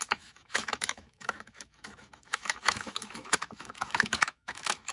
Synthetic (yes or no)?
yes